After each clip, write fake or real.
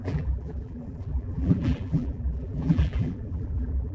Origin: fake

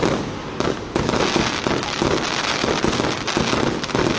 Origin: real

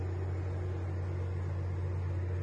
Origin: real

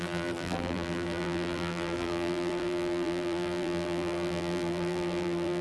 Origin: fake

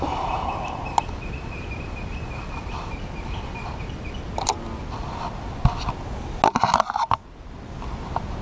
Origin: real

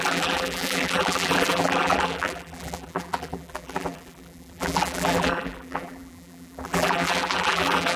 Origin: fake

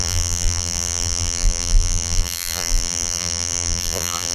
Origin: fake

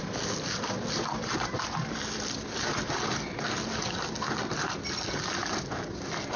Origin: real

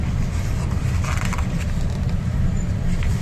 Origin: fake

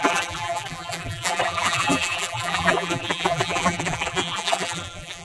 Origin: fake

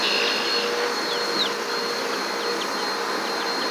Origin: real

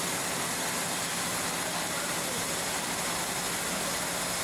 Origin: real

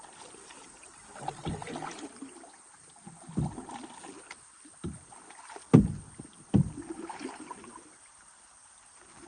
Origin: fake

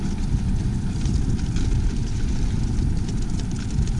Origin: fake